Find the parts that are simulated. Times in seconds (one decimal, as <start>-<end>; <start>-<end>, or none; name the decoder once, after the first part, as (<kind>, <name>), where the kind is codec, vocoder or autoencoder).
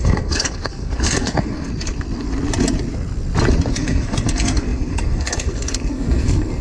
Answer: 0.0-1.7 (codec, SNAC); 3.7-6.6